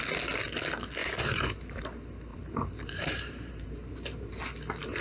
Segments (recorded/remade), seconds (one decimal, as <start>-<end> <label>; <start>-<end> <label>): 0.0-1.0 recorded; 1.0-1.8 remade; 1.8-2.3 recorded; 2.3-4.4 remade; 4.4-5.0 recorded